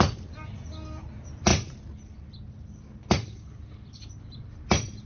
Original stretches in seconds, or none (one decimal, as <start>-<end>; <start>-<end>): 0.0-5.1